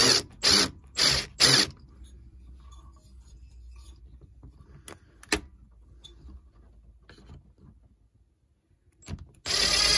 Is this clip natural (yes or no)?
yes